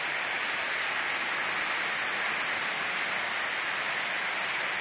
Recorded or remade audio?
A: recorded